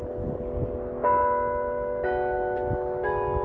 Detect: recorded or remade recorded